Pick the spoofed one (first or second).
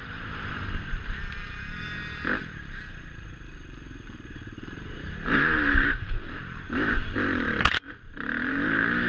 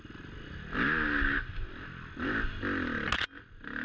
first